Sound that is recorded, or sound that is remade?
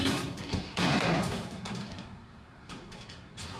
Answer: remade